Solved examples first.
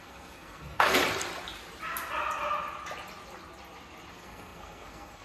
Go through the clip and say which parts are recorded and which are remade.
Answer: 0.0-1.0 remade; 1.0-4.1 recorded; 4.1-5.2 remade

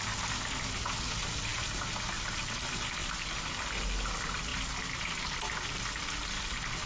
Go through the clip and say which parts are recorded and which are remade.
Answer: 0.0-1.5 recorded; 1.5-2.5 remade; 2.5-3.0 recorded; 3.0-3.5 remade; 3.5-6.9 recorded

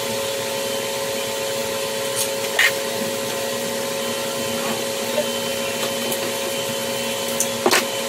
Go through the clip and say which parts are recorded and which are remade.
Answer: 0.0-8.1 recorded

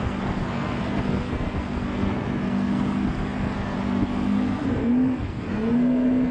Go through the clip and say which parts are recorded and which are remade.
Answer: 0.0-6.3 remade

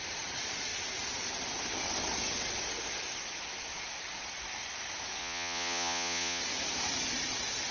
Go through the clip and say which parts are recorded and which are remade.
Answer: 0.0-5.2 recorded; 5.2-6.4 remade; 6.4-7.7 recorded